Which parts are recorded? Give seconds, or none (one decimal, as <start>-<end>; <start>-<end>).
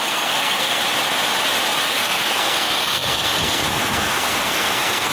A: 0.8-1.9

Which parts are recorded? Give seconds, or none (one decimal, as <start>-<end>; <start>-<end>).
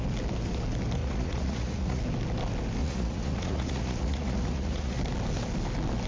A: 0.0-1.0; 2.0-2.8; 5.0-6.1